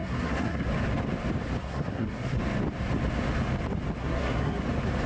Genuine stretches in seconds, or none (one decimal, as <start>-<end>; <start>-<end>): 0.7-1.6; 2.4-4.0; 4.6-5.1